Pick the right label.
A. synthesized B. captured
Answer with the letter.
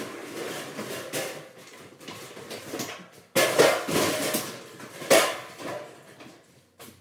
B